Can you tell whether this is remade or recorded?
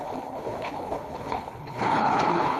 remade